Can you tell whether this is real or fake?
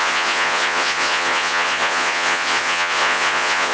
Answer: fake